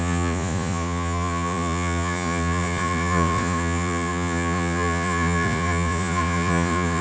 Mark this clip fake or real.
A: fake